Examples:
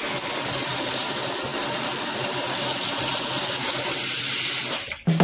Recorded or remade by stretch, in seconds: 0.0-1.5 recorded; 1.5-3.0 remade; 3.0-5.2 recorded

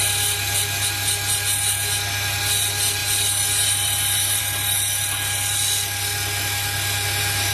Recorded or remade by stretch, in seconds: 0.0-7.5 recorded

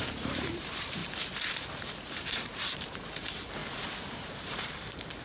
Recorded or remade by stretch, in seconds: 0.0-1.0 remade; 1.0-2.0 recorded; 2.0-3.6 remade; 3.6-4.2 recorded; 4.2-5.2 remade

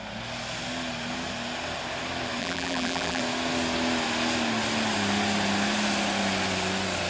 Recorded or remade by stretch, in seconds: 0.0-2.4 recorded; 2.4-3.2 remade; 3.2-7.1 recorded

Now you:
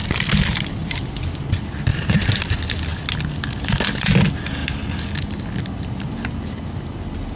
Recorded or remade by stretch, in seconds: 0.0-1.0 remade; 1.0-1.9 recorded; 1.9-2.5 remade; 2.5-7.4 recorded